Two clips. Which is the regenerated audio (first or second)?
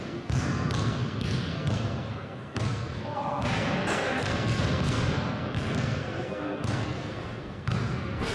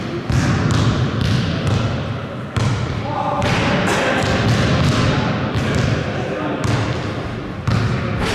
first